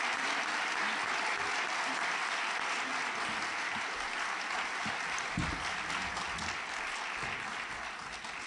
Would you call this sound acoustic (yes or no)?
yes